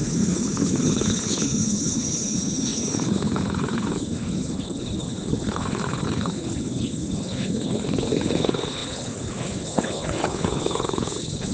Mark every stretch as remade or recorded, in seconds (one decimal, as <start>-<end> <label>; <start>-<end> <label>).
0.0-11.5 remade